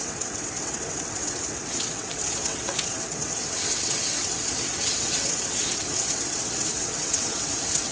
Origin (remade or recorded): remade